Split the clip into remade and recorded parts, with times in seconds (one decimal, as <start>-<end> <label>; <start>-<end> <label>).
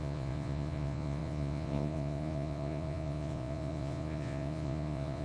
0.0-5.2 remade